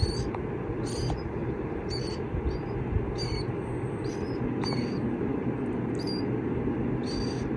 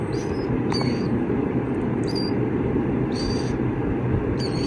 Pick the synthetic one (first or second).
second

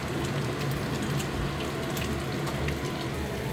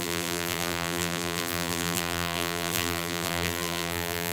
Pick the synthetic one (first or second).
second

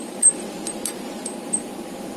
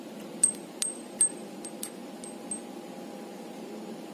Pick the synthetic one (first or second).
first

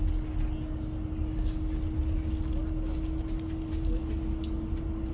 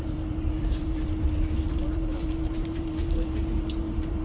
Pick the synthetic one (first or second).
second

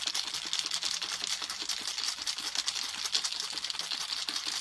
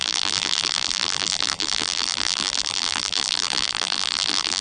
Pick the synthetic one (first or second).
second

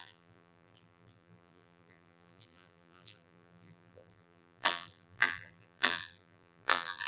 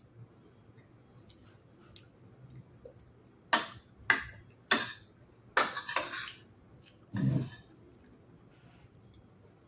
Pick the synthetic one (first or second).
first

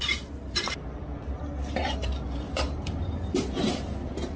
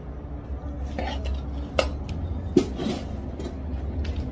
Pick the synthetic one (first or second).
first